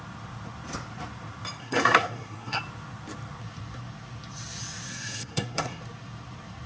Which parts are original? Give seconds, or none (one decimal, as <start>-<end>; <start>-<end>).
0.0-1.6; 2.6-4.9; 5.8-6.7